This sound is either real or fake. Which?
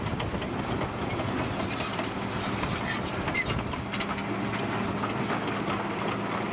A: real